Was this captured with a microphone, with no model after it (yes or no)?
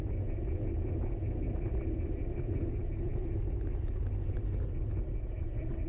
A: yes